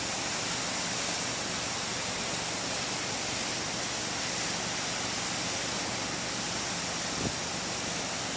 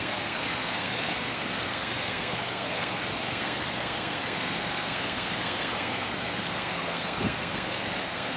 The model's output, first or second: second